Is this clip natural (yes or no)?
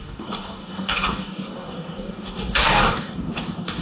no